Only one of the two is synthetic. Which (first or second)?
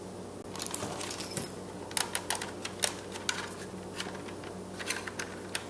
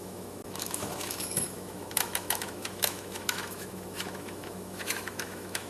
second